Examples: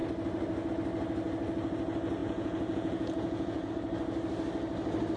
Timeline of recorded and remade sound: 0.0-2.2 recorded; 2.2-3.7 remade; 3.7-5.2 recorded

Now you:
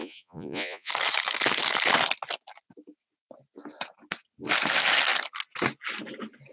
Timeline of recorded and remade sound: 0.0-0.9 remade; 0.9-6.5 recorded

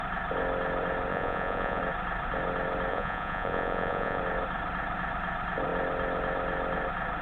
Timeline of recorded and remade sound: 0.0-1.1 recorded; 1.1-1.8 remade; 1.8-2.9 recorded; 2.9-4.2 remade; 4.2-7.2 recorded

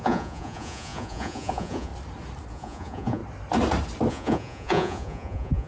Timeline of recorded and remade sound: 0.0-1.9 remade; 1.9-2.5 recorded; 2.5-3.2 remade; 3.2-4.1 recorded; 4.1-5.7 remade

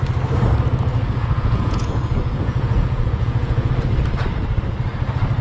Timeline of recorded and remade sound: 0.0-0.9 recorded; 0.9-3.7 remade; 3.7-5.4 recorded

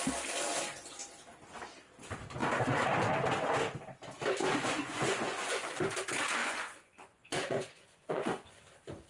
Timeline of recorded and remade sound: 0.0-4.4 recorded; 4.4-5.7 remade; 5.7-6.4 recorded; 6.4-8.6 remade; 8.6-9.1 recorded

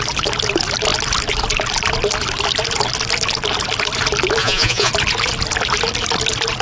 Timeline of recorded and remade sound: 0.0-4.4 recorded; 4.4-4.9 remade; 4.9-6.6 recorded

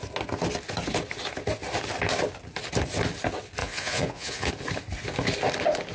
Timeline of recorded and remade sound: 0.0-3.6 recorded; 3.6-4.5 remade; 4.5-5.9 recorded